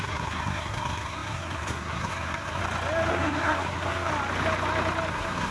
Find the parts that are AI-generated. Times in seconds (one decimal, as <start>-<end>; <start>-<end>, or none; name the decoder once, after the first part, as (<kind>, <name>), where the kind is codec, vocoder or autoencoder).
0.0-2.6 (codec, SNAC); 3.1-4.1; 5.1-5.5